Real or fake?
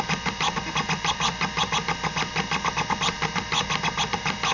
real